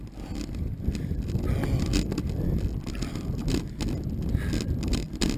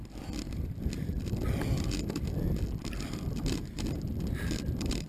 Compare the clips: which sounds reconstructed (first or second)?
second